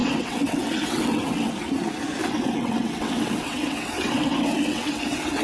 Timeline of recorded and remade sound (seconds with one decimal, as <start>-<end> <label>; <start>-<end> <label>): 0.0-1.5 remade; 1.5-2.2 recorded; 2.2-5.4 remade